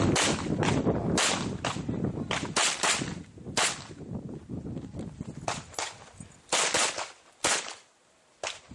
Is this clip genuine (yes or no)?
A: yes